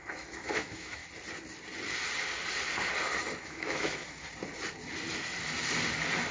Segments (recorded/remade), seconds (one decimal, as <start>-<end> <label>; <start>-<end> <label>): 0.0-1.0 remade; 1.0-3.4 recorded; 3.4-4.0 remade; 4.0-6.3 recorded